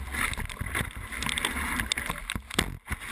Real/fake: real